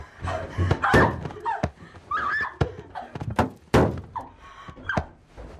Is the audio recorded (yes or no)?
yes